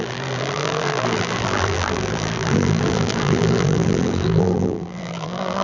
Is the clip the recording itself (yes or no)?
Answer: no